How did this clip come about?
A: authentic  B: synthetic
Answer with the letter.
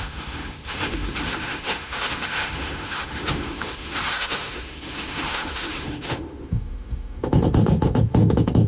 B